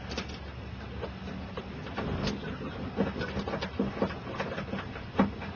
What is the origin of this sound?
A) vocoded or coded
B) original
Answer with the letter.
B